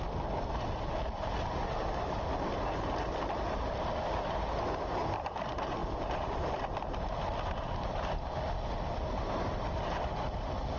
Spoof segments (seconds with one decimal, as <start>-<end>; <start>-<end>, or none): none